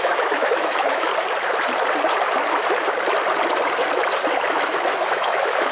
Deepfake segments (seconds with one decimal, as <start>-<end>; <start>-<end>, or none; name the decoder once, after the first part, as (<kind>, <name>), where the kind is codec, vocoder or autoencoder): 0.0-1.1 (autoencoder, DAC-VAE); 4.5-5.7